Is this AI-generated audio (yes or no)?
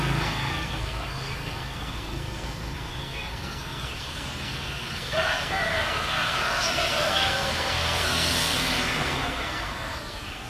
yes